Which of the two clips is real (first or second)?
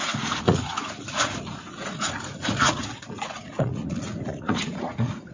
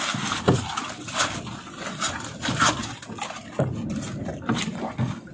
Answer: second